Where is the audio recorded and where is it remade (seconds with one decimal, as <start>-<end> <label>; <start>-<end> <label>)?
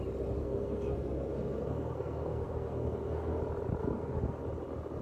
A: 0.0-0.4 recorded; 0.4-3.4 remade; 3.4-3.8 recorded; 3.8-4.4 remade; 4.4-5.0 recorded